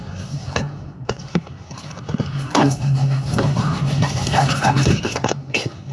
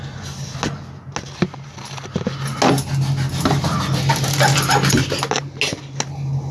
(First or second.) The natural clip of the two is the second